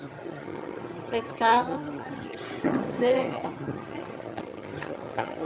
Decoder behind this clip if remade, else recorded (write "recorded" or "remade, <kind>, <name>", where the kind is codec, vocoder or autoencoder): remade, vocoder, HiFi-GAN